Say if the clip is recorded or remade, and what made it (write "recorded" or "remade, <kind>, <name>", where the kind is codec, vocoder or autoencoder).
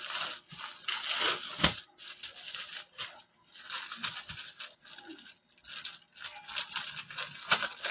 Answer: recorded